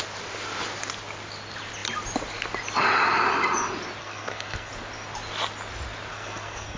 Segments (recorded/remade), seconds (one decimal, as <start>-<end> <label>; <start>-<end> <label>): 0.0-4.0 recorded; 4.0-4.7 remade; 4.7-6.1 recorded; 6.1-6.8 remade